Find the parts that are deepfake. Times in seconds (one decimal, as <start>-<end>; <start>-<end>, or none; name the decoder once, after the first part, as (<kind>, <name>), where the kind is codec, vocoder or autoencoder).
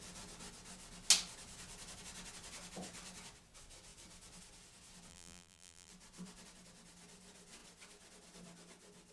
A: 5.1-5.9 (vocoder, BigVGAN v2)